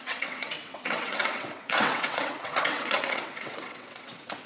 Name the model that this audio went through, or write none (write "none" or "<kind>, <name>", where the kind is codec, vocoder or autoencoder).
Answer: vocoder, WaveNeXt